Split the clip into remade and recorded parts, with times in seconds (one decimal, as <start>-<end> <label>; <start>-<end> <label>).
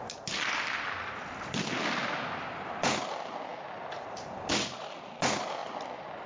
0.0-3.5 recorded; 3.5-4.5 remade; 4.5-6.3 recorded